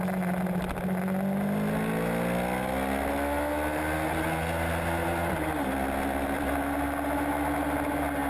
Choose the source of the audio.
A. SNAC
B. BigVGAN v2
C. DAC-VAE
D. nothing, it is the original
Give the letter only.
D